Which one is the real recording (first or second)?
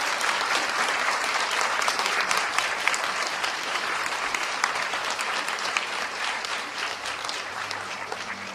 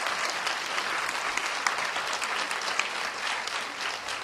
second